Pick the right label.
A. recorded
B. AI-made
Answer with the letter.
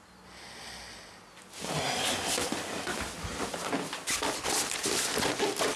A